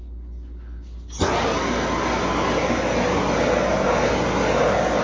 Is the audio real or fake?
real